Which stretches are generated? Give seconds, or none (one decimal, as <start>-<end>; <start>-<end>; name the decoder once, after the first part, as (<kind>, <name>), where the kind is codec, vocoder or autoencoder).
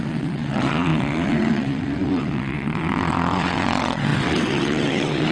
0.0-5.3 (vocoder, WaveNeXt)